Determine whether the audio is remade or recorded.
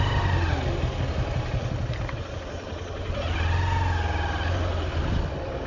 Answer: recorded